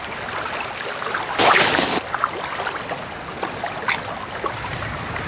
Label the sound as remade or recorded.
recorded